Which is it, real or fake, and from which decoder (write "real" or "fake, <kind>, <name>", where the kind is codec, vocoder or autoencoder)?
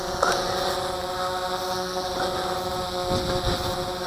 real